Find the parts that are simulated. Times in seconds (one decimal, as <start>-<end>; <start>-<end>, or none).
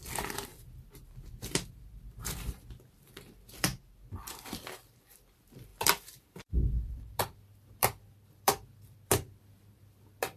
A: 0.0-3.7; 4.4-10.4